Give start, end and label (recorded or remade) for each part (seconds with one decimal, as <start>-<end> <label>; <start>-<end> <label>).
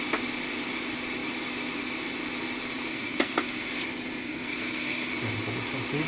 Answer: 0.0-2.9 recorded; 2.9-3.7 remade; 3.7-4.2 recorded; 4.2-5.2 remade; 5.2-6.1 recorded